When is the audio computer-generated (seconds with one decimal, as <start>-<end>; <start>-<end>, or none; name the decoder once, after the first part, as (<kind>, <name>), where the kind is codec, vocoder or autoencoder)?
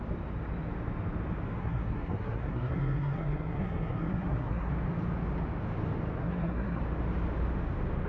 1.6-4.7 (codec, SNAC); 6.2-6.8